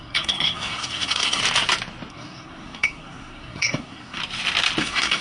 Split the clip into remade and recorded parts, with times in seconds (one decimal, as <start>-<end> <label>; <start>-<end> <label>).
0.0-1.4 remade; 1.4-2.1 recorded; 2.1-4.2 remade; 4.2-4.8 recorded; 4.8-5.2 remade